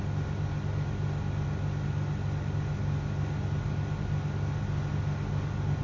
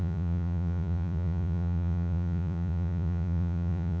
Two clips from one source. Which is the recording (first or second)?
first